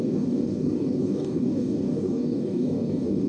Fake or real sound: fake